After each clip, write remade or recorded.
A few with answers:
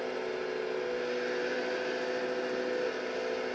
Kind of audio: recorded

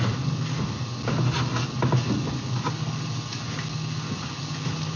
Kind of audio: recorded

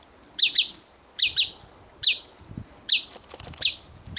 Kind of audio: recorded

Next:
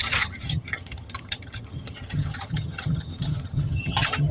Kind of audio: remade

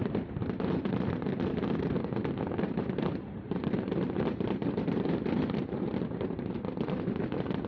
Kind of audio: remade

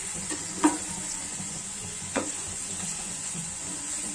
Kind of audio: remade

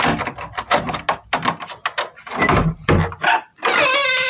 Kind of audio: recorded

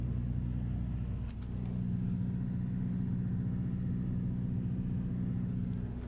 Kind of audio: recorded